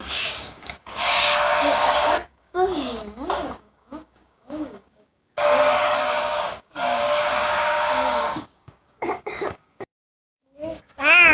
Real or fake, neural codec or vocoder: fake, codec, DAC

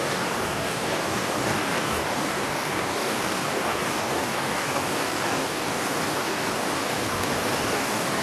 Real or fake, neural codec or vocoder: fake, codec, DAC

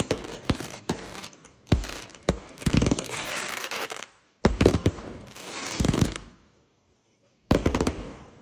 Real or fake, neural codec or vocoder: fake, codec, DAC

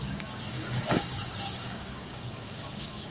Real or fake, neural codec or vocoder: fake, codec, DAC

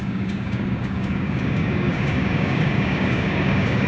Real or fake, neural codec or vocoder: fake, codec, DAC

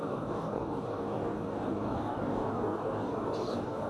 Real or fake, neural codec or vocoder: fake, codec, DAC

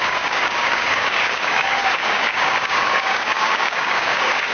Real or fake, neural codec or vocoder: fake, codec, DAC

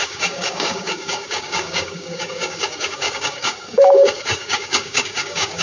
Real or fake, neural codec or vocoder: fake, codec, DAC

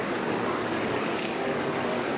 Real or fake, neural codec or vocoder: fake, codec, DAC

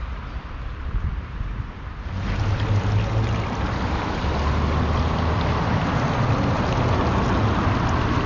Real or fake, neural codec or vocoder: real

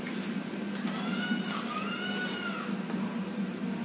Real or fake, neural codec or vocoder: real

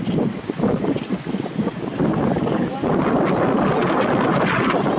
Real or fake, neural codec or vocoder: real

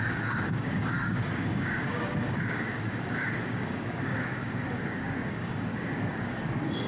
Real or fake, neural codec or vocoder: fake, codec, DAC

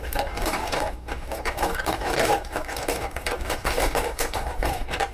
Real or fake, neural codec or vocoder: fake, codec, DAC